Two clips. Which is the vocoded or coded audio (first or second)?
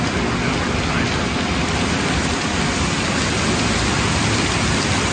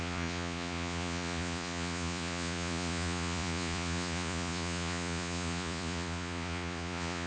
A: second